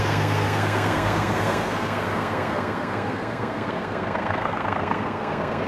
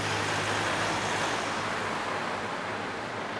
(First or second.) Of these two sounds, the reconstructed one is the first